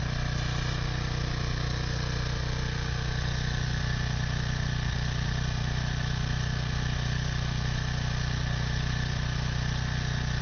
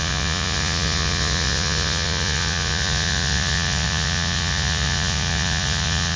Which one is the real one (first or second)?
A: first